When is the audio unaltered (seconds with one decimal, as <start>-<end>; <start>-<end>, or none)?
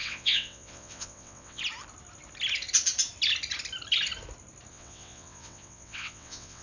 1.6-4.7